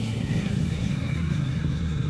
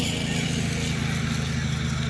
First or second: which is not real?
first